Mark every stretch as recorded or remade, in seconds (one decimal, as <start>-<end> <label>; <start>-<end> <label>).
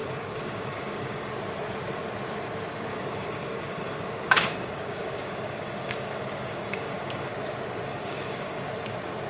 0.0-1.3 remade; 1.3-2.9 recorded; 2.9-7.3 remade; 7.3-7.9 recorded; 7.9-8.6 remade; 8.6-9.3 recorded